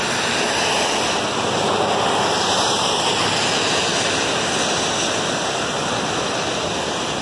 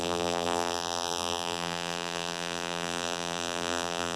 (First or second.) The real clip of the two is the first